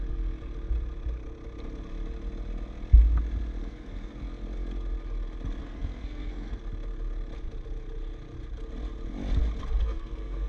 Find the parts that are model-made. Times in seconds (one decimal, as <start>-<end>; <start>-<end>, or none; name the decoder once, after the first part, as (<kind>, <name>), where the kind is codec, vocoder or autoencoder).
3.6-4.2 (codec, SNAC); 5.6-6.6; 9.8-10.5